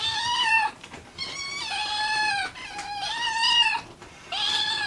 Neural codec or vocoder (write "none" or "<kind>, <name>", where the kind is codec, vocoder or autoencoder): none